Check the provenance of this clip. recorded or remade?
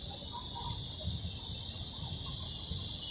recorded